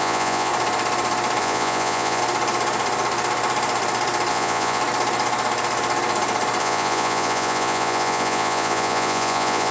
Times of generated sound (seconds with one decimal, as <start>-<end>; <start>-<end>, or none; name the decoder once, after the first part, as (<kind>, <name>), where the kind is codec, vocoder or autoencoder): 0.0-0.5 (vocoder, Vocos); 1.4-2.2; 4.3-4.8; 6.6-9.7